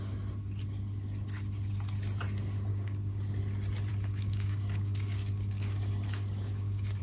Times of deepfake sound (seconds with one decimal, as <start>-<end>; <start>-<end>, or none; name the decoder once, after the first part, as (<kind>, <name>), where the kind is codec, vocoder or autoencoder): 2.7-3.4 (codec, DAC); 3.9-7.0